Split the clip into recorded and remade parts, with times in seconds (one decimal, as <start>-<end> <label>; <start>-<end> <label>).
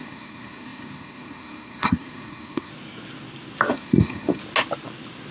0.0-2.7 remade; 2.7-3.7 recorded; 3.7-4.4 remade; 4.4-5.3 recorded